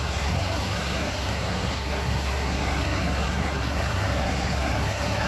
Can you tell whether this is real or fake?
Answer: fake